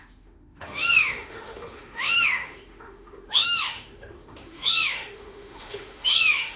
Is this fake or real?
fake